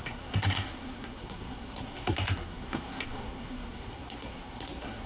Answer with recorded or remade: remade